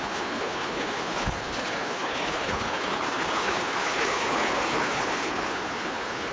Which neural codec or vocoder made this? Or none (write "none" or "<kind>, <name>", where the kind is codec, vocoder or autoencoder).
codec, HILCodec